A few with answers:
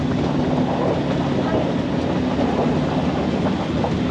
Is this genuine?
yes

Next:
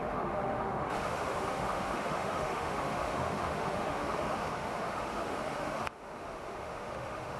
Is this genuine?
no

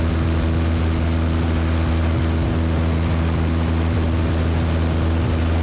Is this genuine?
yes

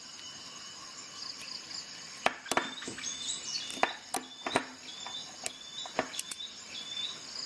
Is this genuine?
yes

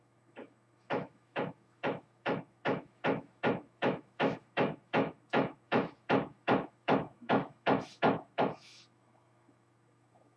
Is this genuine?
no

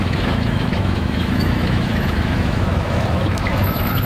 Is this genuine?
no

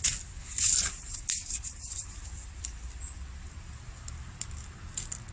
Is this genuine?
yes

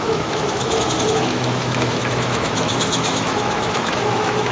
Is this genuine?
no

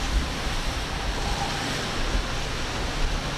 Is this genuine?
yes